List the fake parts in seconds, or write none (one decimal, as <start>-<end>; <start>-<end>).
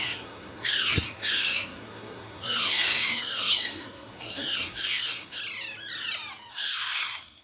0.0-5.4; 6.5-7.4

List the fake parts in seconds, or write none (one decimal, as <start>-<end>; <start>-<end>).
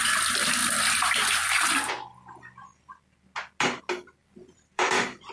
4.2-5.3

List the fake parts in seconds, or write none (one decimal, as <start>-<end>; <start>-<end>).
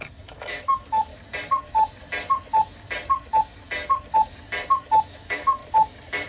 0.0-1.1; 4.9-5.6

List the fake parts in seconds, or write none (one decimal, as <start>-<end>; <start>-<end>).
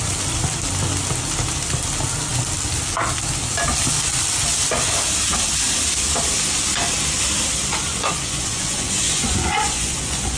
7.9-10.4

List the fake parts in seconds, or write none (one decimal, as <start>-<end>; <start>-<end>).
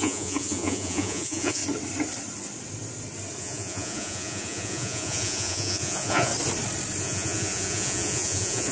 0.0-1.6; 3.4-6.3; 7.0-8.7